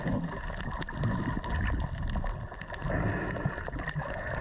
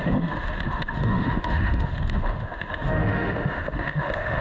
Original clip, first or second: first